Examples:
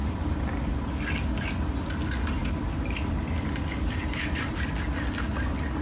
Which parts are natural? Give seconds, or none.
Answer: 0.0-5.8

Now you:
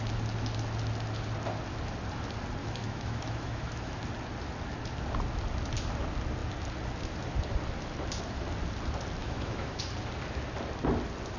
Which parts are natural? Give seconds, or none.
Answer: 0.0-2.6; 4.0-9.2; 9.8-11.4

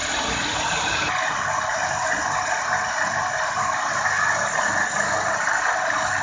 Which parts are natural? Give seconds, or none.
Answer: 0.0-6.2

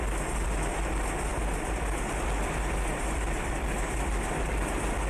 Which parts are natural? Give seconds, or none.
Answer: 0.0-5.1

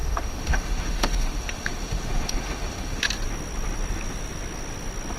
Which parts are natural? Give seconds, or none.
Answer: 3.1-5.2